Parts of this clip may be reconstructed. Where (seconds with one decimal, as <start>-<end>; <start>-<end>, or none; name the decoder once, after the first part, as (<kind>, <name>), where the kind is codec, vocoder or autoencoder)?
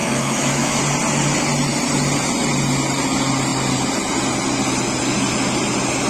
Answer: 0.0-0.8 (autoencoder, DAC-VAE)